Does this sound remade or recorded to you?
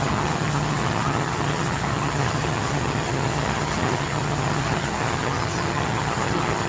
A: remade